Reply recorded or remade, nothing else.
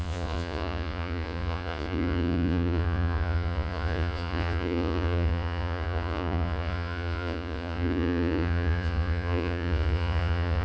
remade